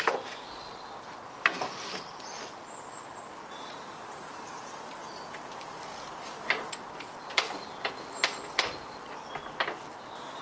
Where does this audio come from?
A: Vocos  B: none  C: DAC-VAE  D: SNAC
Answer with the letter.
B